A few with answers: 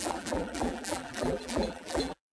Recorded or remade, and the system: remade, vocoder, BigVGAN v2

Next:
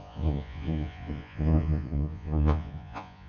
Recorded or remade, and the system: remade, vocoder, Vocos